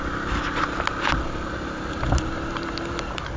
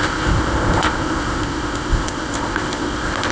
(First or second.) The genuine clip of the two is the first